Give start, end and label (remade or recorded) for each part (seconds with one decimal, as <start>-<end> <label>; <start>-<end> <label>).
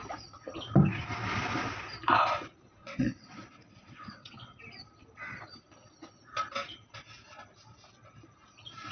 0.0-2.8 recorded; 2.8-4.6 remade; 4.6-8.9 recorded